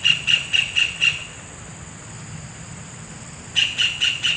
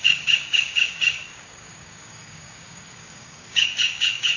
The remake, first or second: second